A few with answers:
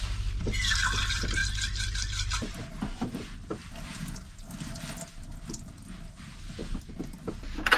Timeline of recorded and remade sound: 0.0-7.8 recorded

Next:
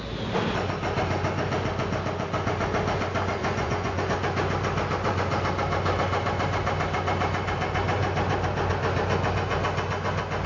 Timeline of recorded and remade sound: 0.0-3.4 recorded; 3.4-4.0 remade; 4.0-10.5 recorded

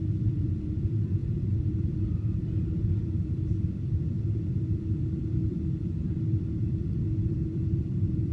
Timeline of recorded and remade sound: 0.0-8.3 remade

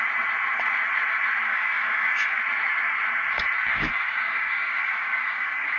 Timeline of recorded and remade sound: 0.0-1.5 recorded; 1.5-2.4 remade; 2.4-3.7 recorded; 3.7-5.8 remade